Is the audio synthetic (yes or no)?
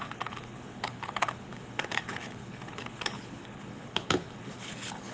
yes